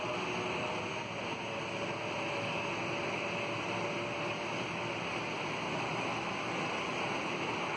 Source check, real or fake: real